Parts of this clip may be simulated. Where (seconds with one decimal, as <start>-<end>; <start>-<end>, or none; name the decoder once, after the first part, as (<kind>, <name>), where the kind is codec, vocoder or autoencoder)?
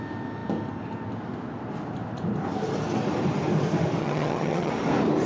4.0-4.7 (vocoder, HiFi-GAN)